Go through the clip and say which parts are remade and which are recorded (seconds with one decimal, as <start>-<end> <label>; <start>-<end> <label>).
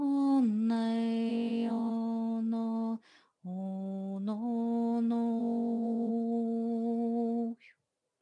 0.0-1.3 recorded; 1.3-1.9 remade; 1.9-5.4 recorded; 5.4-6.1 remade; 6.1-8.2 recorded